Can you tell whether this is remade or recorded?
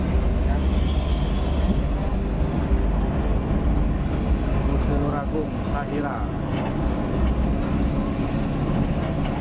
recorded